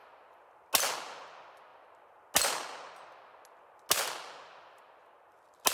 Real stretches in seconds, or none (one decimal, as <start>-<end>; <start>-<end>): 0.0-5.7